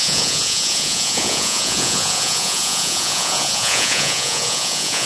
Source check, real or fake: fake